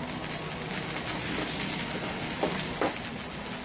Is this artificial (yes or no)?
no